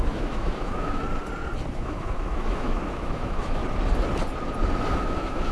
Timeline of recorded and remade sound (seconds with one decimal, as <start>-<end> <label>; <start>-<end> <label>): 0.0-1.0 remade; 1.0-1.7 recorded; 1.7-3.6 remade; 3.6-5.0 recorded; 5.0-5.5 remade